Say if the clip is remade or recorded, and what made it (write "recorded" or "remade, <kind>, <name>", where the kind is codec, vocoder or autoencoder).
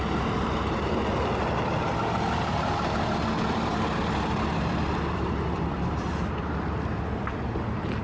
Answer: recorded